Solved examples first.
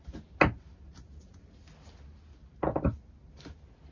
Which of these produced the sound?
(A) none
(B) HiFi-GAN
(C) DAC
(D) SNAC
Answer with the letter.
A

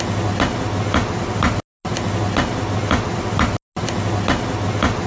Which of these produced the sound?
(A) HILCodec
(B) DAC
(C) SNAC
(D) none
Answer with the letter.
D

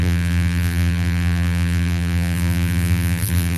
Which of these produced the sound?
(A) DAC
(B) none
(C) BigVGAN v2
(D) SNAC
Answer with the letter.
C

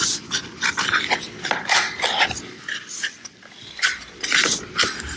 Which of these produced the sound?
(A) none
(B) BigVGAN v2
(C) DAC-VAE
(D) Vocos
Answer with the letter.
B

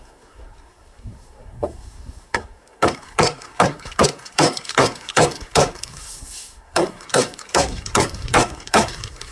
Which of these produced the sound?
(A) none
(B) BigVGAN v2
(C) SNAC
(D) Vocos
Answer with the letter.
C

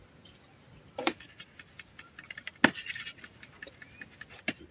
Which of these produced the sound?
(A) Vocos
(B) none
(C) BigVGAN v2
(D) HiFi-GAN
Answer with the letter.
B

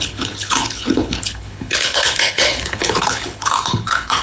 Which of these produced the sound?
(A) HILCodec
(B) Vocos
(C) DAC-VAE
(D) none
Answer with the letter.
A